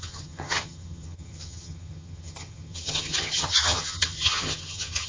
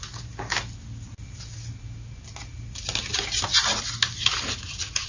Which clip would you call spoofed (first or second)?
first